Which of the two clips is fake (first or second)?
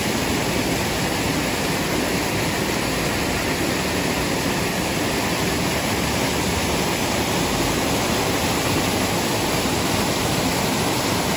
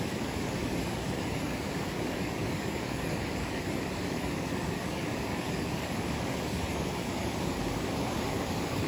second